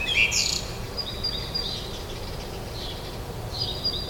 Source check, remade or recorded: recorded